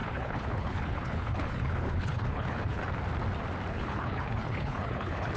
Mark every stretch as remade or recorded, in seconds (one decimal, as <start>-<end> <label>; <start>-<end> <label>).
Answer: 0.0-2.8 remade; 2.8-3.7 recorded; 3.7-5.4 remade